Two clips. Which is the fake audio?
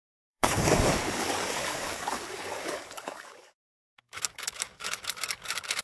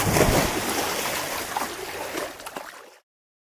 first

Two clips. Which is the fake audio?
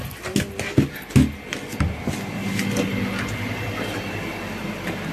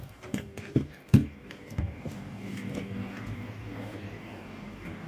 second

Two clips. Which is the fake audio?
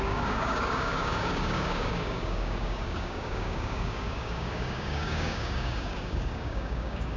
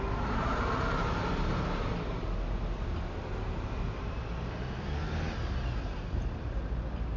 first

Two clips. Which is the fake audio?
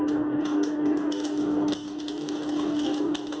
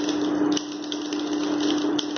first